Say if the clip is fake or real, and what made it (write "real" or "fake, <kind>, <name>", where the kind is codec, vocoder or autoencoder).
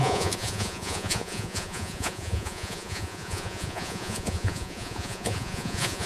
fake, vocoder, Vocos